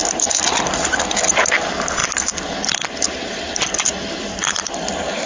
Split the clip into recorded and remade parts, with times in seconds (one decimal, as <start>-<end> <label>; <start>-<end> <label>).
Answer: 0.0-2.0 recorded; 2.0-5.3 remade